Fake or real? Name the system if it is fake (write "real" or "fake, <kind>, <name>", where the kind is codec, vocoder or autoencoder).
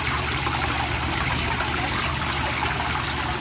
real